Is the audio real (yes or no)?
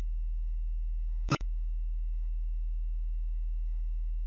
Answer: no